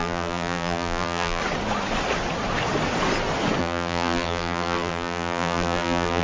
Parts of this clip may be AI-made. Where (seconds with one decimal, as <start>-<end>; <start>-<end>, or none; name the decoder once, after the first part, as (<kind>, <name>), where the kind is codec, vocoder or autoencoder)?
0.0-1.4 (vocoder, BigVGAN v2); 3.6-6.2